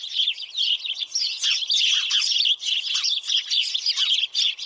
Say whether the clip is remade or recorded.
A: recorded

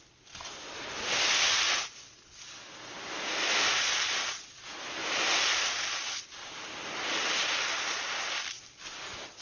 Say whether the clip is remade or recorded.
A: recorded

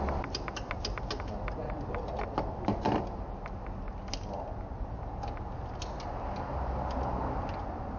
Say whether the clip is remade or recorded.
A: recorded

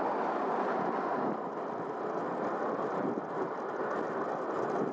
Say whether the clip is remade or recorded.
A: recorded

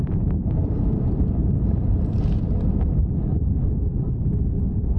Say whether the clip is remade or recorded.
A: remade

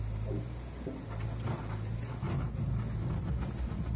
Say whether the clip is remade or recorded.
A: recorded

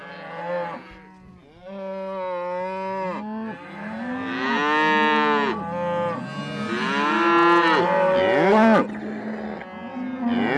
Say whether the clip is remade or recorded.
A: recorded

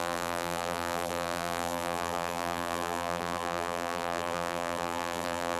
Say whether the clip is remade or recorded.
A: remade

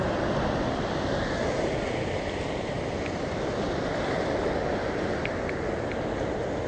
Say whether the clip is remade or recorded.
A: recorded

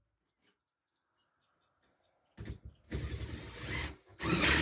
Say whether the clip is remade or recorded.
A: recorded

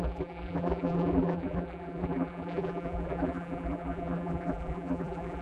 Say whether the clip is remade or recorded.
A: remade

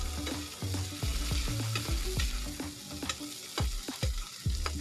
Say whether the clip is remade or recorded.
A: recorded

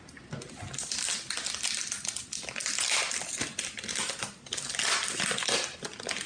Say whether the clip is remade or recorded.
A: recorded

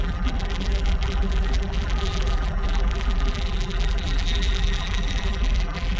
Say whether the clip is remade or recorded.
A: remade